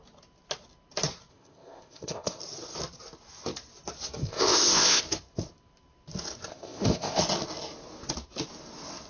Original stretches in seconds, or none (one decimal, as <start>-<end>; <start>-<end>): 0.0-1.3; 2.4-4.2; 5.0-6.5; 7.2-9.1